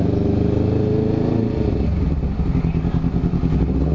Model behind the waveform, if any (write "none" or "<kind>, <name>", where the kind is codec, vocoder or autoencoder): none